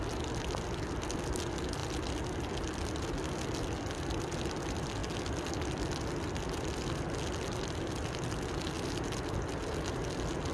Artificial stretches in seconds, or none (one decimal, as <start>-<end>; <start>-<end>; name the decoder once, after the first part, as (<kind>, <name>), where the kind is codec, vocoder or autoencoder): none